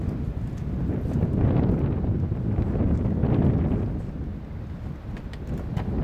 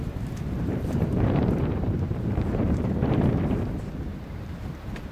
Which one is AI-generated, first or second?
second